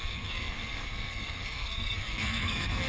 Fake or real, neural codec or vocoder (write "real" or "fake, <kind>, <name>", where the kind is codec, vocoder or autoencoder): fake, codec, SNAC